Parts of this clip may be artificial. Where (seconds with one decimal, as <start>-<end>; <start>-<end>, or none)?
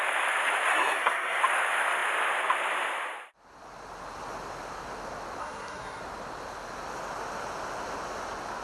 0.7-1.4; 5.4-6.0